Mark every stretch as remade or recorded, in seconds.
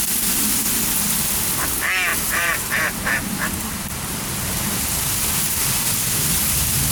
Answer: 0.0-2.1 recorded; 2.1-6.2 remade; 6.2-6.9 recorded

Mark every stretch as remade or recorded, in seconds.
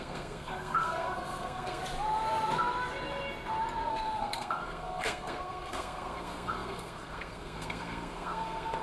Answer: 0.0-1.8 remade; 1.8-3.9 recorded; 3.9-8.8 remade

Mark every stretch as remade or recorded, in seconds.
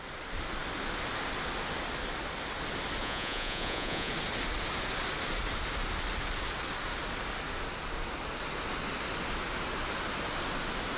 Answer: 0.0-3.0 recorded; 3.0-4.1 remade; 4.1-11.0 recorded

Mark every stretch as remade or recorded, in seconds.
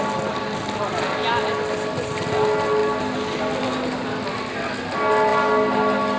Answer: 0.0-6.2 recorded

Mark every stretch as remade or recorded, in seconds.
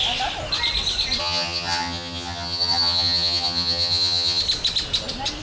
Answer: 0.0-1.2 recorded; 1.2-4.4 remade; 4.4-5.4 recorded